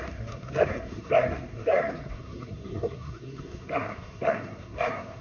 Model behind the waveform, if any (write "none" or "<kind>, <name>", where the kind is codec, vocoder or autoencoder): codec, SNAC